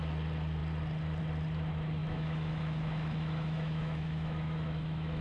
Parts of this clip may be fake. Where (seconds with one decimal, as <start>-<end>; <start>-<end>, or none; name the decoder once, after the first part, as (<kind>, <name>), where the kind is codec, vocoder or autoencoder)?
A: 2.0-5.2 (autoencoder, DAC-VAE)